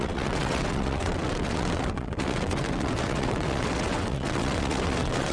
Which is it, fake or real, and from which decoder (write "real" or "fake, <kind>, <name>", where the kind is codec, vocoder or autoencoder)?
fake, vocoder, WaveNeXt